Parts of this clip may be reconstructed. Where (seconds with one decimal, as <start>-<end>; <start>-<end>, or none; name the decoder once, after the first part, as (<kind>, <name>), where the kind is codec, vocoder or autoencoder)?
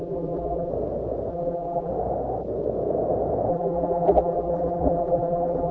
0.0-0.7 (vocoder, BigVGAN v2); 1.3-1.9; 3.5-5.7